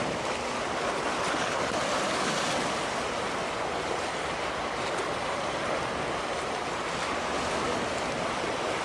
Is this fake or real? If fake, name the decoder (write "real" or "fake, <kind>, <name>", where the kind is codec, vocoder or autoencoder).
real